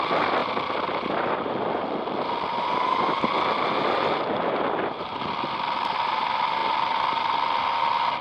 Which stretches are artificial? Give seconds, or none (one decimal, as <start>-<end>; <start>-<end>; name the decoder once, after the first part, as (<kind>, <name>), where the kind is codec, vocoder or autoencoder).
none